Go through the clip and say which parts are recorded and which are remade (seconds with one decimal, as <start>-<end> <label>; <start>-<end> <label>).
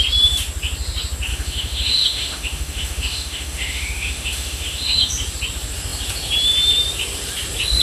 0.0-1.3 recorded; 1.3-5.1 remade; 5.1-7.8 recorded